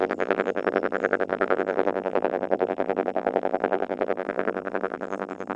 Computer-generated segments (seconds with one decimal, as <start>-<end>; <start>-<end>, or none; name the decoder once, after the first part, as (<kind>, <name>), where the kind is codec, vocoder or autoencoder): 0.0-5.6 (vocoder, BigVGAN v2)